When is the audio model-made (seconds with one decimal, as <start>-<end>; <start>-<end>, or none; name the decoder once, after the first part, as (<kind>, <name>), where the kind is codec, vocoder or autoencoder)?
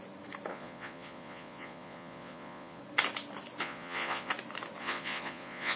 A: 0.5-2.8 (vocoder, Vocos); 3.6-4.3; 4.8-5.8